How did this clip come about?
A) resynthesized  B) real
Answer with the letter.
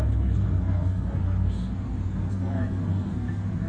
A